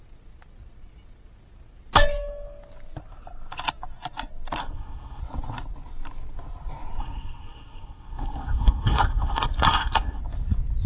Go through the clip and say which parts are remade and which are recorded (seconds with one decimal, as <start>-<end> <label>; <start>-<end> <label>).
0.0-4.6 recorded; 4.6-5.2 remade; 5.2-7.0 recorded; 7.0-10.2 remade; 10.2-10.9 recorded